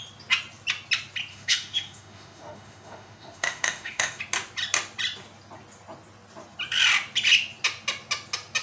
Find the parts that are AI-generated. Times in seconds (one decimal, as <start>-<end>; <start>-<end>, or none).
1.3-4.2